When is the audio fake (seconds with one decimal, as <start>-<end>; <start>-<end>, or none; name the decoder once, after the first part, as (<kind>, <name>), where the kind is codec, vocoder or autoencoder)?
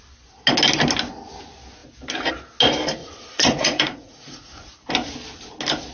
3.0-4.9 (vocoder, Vocos)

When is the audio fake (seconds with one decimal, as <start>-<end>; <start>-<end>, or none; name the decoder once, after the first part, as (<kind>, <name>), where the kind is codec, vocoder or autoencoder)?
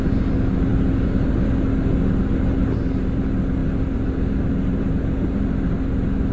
none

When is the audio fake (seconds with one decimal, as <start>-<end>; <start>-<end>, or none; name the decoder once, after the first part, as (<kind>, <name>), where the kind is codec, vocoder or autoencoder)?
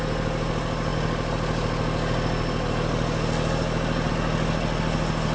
none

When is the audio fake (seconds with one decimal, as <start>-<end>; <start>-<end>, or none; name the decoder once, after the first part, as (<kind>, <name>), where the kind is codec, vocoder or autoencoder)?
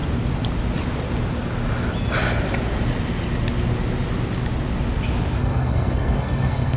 5.4-6.8 (codec, SNAC)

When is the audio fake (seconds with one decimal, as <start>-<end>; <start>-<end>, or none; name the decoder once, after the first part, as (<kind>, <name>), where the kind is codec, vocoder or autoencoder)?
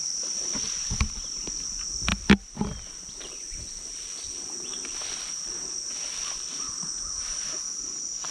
none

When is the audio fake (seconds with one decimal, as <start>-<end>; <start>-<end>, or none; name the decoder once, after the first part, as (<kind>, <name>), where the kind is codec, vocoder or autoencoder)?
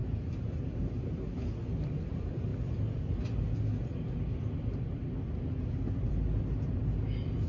none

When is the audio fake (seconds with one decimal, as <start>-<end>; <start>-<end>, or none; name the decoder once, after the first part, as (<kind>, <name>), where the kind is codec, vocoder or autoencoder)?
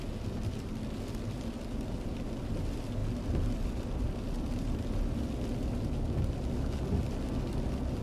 none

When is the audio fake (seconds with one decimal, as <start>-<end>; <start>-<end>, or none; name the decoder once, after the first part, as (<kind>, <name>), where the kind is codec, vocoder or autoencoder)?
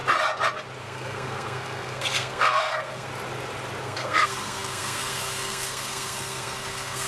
0.8-3.1 (codec, SNAC); 3.8-7.1